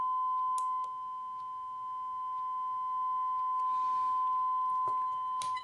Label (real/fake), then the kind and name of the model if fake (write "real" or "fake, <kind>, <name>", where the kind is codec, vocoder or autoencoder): real